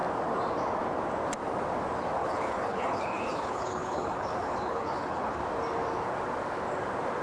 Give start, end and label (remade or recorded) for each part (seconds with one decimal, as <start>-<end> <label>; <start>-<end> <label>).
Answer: 0.0-2.2 recorded; 2.2-5.4 remade; 5.4-7.2 recorded